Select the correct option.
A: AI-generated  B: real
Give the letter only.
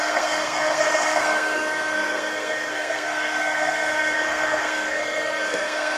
A